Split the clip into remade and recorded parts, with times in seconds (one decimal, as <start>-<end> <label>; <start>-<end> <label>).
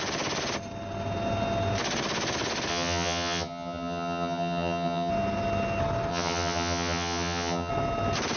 0.0-2.7 recorded; 2.7-5.1 remade; 5.1-6.1 recorded; 6.1-7.7 remade; 7.7-8.4 recorded